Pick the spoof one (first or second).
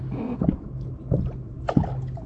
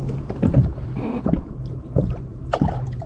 second